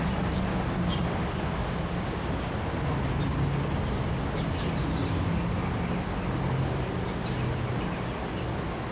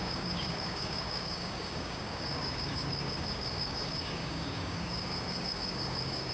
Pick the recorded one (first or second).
first